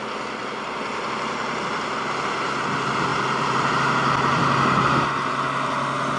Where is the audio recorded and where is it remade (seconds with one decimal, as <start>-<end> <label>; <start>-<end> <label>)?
0.0-0.4 recorded; 0.4-1.8 remade; 1.8-3.1 recorded; 3.1-3.7 remade; 3.7-6.2 recorded